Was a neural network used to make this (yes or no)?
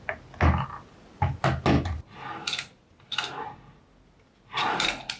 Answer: no